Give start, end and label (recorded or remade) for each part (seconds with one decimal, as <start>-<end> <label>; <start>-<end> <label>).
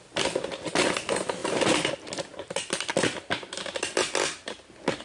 0.0-5.0 recorded